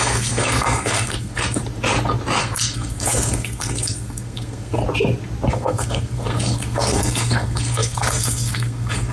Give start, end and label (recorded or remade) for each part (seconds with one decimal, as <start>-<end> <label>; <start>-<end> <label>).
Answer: 0.0-1.6 remade; 1.6-2.4 recorded; 2.4-4.8 remade; 4.8-5.5 recorded; 5.5-9.1 remade